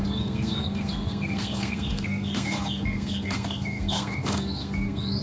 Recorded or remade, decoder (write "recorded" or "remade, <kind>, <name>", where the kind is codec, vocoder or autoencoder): remade, codec, SNAC